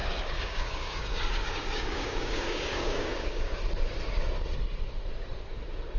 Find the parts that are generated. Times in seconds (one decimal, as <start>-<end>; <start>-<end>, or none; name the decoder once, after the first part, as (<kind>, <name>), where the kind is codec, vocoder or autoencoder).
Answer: 0.0-3.6 (codec, DAC)